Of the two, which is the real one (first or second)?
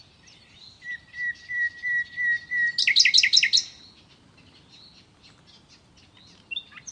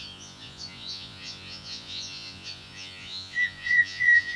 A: first